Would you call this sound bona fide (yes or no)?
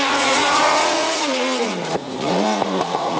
no